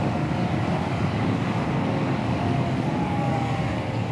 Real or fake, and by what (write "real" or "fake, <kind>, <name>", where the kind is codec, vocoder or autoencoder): fake, codec, DAC